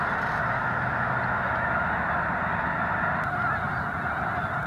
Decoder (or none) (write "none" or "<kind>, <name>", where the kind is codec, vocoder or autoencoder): none